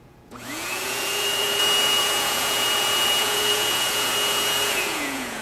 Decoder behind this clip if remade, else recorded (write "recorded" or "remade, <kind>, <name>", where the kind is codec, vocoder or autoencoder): remade, vocoder, Vocos